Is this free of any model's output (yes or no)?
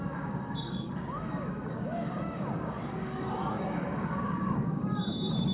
no